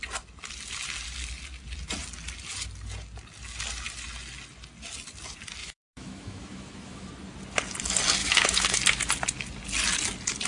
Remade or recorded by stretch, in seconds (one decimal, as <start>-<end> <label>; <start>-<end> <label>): 0.0-5.6 recorded; 5.6-7.1 remade; 7.1-8.2 recorded; 8.2-8.8 remade; 8.8-10.5 recorded